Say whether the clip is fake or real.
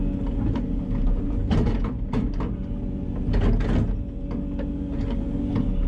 real